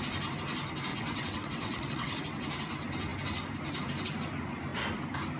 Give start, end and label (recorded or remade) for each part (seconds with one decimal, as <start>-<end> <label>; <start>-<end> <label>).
0.0-0.9 recorded; 0.9-2.2 remade; 2.2-5.4 recorded